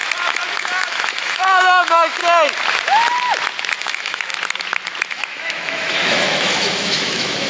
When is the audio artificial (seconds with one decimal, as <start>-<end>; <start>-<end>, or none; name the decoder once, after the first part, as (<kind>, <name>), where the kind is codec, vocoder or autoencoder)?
0.6-2.2 (autoencoder, DAC-VAE); 3.8-4.3; 5.1-7.5